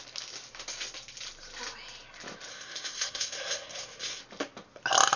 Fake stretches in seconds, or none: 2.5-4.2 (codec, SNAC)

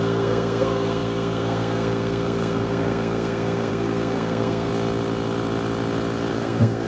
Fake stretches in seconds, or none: 0.0-4.7 (codec, SNAC); 6.3-6.9

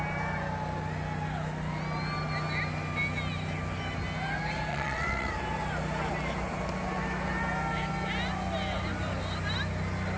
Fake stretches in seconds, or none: 4.7-5.3 (vocoder, WaveNeXt)